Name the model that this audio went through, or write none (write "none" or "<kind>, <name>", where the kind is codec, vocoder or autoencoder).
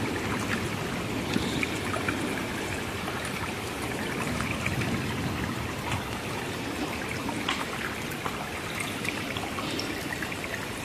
none